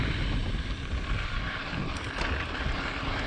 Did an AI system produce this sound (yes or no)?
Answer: no